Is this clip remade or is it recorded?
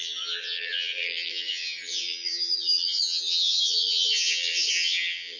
remade